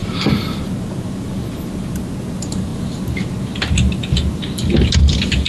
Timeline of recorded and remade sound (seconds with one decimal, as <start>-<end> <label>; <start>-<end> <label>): 0.0-0.6 remade; 0.6-5.5 recorded